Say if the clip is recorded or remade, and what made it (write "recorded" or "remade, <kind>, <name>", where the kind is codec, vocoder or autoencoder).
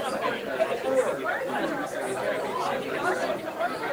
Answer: recorded